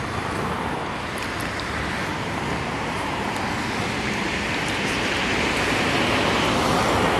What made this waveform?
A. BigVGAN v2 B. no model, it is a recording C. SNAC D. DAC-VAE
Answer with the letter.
B